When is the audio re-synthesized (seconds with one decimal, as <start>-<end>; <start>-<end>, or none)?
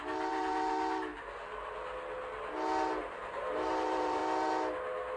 0.0-1.1; 3.0-4.2